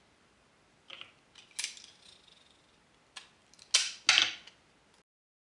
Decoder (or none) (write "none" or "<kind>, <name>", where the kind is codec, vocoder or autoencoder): none